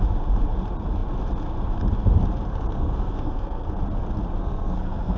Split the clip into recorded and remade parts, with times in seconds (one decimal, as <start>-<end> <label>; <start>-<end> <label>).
0.0-2.5 recorded; 2.5-3.8 remade; 3.8-4.4 recorded; 4.4-5.2 remade